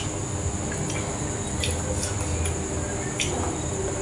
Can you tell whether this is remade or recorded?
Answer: recorded